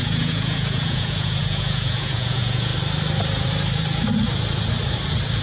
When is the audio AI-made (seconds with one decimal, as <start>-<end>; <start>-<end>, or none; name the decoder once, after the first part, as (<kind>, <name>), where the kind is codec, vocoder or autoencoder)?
0.0-2.7 (vocoder, Vocos)